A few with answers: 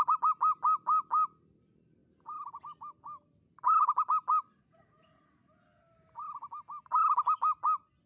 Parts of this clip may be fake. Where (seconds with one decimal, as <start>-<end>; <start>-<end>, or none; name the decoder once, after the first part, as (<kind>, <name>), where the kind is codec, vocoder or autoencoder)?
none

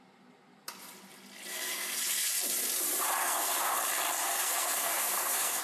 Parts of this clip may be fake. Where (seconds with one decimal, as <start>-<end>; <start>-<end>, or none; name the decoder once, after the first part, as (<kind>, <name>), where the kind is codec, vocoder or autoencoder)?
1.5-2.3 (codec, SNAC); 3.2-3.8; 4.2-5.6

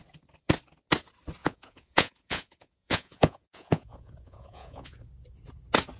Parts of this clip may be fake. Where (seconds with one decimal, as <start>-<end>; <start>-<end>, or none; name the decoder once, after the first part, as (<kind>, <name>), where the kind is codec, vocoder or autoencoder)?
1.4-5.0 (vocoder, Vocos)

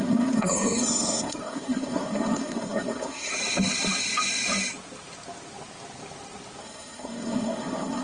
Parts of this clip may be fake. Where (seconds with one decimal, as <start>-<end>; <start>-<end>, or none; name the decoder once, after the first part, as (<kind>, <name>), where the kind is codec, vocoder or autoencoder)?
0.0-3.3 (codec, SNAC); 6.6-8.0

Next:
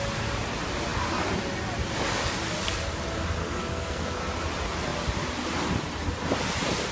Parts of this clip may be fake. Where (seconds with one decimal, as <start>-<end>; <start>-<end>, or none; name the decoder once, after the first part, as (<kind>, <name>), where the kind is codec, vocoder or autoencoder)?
3.4-4.2 (codec, SNAC)